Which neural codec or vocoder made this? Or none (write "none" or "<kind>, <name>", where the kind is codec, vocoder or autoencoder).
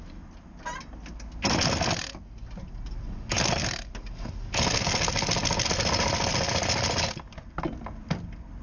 none